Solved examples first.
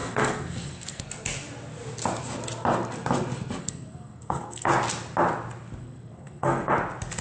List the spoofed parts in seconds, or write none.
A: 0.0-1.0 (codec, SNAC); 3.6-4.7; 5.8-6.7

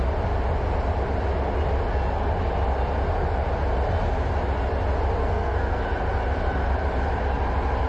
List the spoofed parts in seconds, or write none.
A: 5.2-5.8 (codec, SNAC)

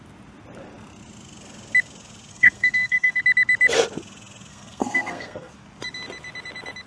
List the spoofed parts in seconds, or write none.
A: 2.3-3.2 (codec, SNAC); 4.5-5.5

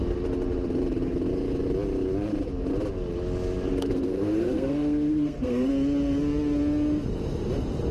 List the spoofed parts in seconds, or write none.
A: 3.7-5.7 (codec, SNAC)